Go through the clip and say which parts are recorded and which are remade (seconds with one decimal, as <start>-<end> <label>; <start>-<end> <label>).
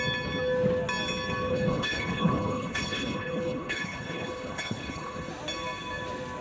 0.0-1.5 recorded; 1.5-5.3 remade; 5.3-6.4 recorded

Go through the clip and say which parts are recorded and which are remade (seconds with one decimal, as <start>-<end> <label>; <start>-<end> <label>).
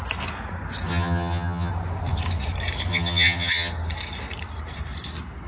0.0-0.9 recorded; 0.9-1.7 remade; 1.7-2.9 recorded; 2.9-3.7 remade; 3.7-5.5 recorded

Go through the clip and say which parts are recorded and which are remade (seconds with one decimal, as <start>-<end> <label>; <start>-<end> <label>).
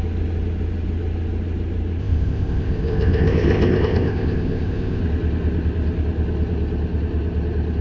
0.0-2.0 recorded; 2.0-5.0 remade; 5.0-7.8 recorded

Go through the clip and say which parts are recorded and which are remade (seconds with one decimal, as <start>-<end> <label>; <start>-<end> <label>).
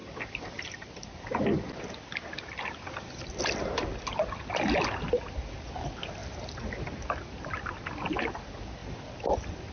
0.0-6.2 recorded; 6.2-8.4 remade; 8.4-9.7 recorded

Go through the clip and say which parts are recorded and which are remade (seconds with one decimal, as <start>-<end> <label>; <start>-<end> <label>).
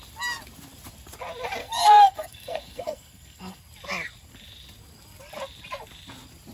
0.0-1.6 recorded; 1.6-3.6 remade; 3.6-6.5 recorded